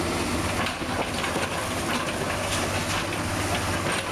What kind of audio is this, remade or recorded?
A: recorded